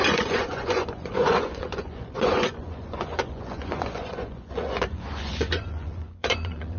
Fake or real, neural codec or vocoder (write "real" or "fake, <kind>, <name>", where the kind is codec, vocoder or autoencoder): fake, vocoder, Vocos